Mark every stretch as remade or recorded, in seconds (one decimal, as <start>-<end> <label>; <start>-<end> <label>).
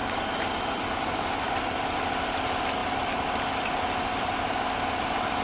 0.0-5.4 recorded